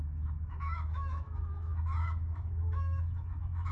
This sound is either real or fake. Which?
fake